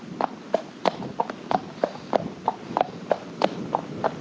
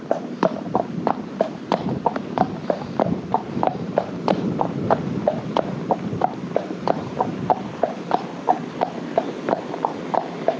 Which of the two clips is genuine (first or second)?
first